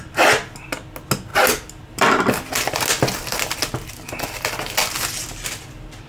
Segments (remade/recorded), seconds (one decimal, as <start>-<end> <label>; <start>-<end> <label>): 0.0-6.1 recorded